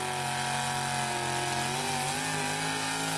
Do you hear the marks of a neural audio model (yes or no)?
no